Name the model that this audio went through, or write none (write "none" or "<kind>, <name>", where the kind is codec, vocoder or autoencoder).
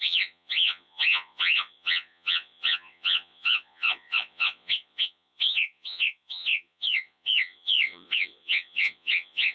vocoder, Vocos